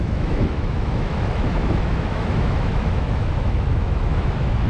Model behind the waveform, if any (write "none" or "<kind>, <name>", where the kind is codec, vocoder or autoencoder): autoencoder, DAC-VAE